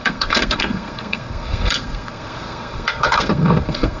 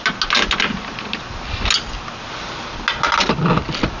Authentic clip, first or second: second